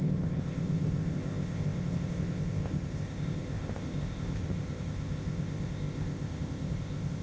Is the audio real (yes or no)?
no